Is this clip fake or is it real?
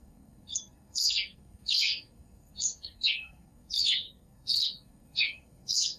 fake